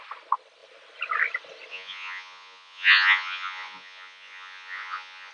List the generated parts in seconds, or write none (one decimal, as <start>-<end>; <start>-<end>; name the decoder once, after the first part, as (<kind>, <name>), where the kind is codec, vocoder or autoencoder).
1.7-5.3 (vocoder, Vocos)